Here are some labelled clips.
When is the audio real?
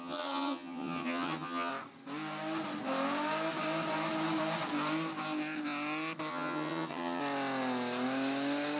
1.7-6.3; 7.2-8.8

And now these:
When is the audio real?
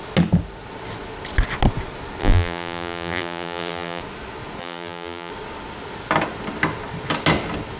0.0-2.2; 4.0-4.6; 5.3-7.8